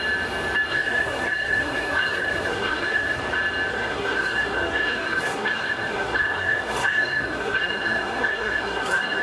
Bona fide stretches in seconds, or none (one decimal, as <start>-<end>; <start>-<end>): 0.0-0.7; 3.2-3.7